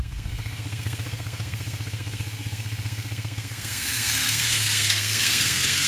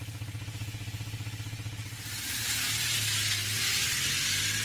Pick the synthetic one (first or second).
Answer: first